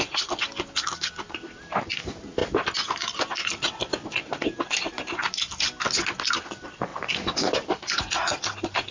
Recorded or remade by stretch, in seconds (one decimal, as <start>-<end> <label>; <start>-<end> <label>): 0.0-6.9 recorded; 6.9-8.0 remade; 8.0-8.9 recorded